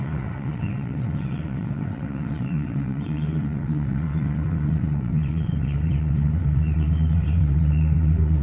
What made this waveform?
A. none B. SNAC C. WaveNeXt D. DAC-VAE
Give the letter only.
C